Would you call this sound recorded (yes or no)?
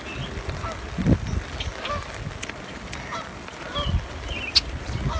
yes